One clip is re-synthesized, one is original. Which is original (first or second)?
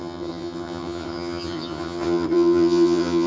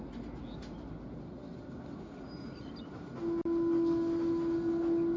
second